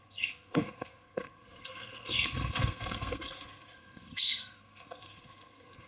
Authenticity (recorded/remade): remade